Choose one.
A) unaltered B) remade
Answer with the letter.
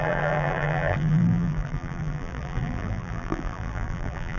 B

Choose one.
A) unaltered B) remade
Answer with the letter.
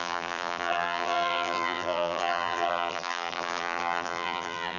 B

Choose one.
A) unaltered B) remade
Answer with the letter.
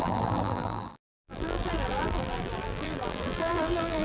B